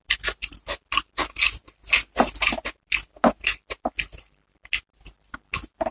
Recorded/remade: recorded